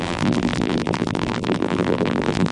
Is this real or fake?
fake